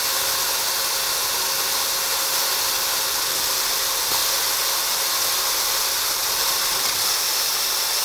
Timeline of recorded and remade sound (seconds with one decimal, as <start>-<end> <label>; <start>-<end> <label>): 0.0-8.0 recorded